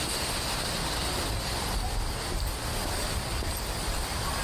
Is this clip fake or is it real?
real